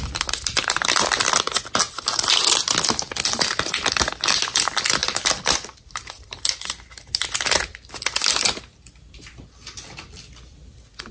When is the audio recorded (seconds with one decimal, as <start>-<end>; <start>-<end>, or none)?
0.0-11.1